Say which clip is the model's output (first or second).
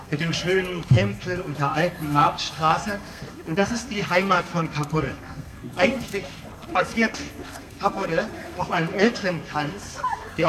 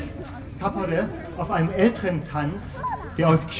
first